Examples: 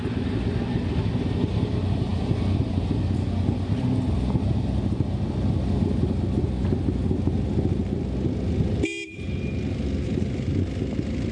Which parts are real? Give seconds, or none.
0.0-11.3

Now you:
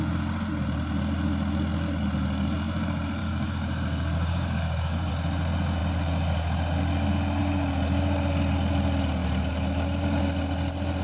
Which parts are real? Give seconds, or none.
0.0-3.2; 5.1-11.0

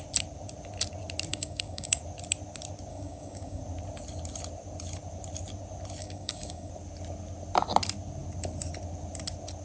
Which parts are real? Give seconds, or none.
0.0-1.3; 2.0-2.9; 3.6-6.0; 6.7-9.6

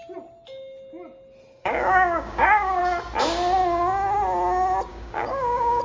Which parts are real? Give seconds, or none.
0.0-1.6; 2.8-4.9

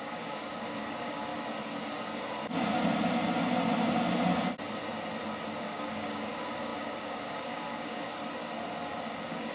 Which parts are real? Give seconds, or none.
1.3-5.6; 8.1-9.0